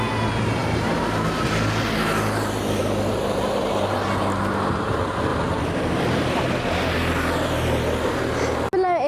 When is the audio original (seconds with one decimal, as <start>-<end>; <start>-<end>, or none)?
0.0-5.3; 6.4-9.1